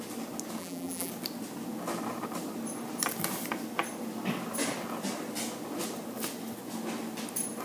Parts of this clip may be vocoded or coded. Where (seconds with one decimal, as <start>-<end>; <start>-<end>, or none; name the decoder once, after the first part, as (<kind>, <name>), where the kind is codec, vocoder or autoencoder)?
0.6-1.1 (vocoder, BigVGAN v2)